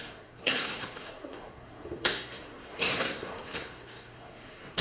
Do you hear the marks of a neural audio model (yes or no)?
yes